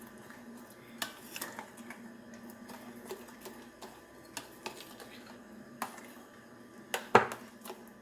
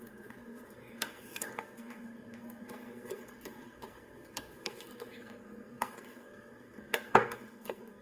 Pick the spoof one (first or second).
second